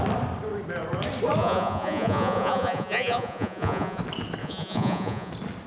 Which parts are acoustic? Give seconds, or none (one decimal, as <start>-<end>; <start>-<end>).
0.0-1.4; 4.0-4.4; 5.3-5.7